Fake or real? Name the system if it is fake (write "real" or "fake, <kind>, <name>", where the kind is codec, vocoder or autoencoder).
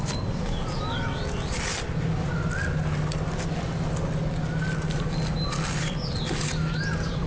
real